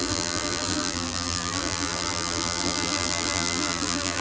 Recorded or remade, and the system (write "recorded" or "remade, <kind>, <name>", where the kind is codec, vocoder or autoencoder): remade, vocoder, BigVGAN v2